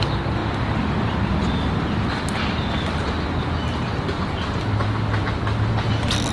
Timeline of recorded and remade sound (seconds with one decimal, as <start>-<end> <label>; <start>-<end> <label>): 0.0-0.4 recorded; 0.4-2.1 remade; 2.1-6.3 recorded